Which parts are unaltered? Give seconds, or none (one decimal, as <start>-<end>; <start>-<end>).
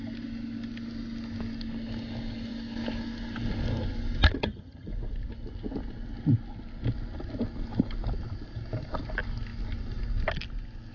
0.0-4.4; 4.9-10.9